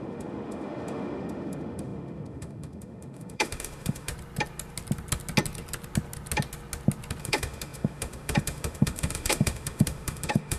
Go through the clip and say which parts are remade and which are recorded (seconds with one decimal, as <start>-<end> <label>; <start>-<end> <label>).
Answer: 0.0-4.1 remade; 4.1-7.2 recorded; 7.2-10.6 remade